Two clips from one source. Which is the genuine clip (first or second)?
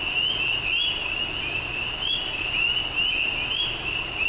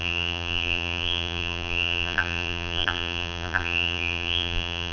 first